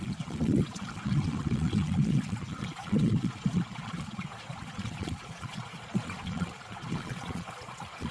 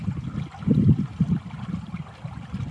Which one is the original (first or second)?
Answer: second